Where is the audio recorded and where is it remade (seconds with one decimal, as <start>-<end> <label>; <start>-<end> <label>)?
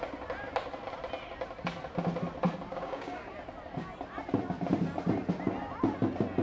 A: 0.0-2.7 recorded; 2.7-3.3 remade; 3.3-6.4 recorded